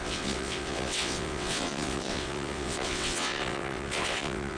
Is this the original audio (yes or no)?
no